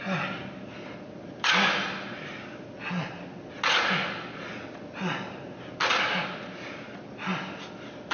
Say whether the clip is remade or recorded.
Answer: recorded